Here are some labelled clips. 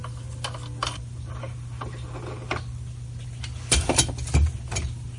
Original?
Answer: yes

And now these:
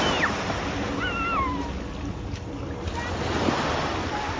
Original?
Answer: yes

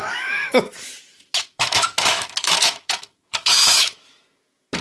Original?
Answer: no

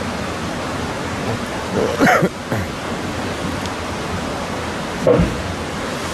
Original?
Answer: yes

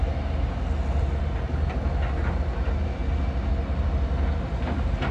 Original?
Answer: yes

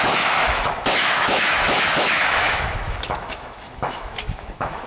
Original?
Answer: no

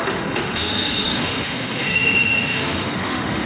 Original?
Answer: no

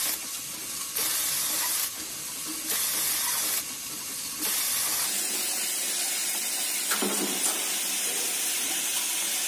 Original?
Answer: yes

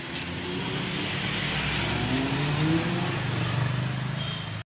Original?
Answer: yes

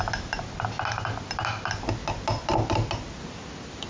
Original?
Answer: yes